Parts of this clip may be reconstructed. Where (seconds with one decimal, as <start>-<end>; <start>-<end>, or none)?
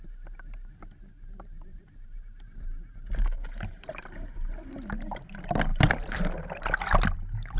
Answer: 1.1-4.5